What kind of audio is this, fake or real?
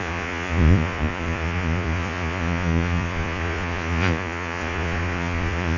fake